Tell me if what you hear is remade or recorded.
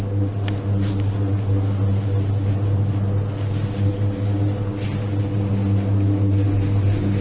recorded